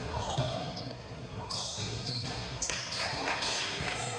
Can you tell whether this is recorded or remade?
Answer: remade